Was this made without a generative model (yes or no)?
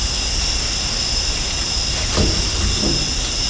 yes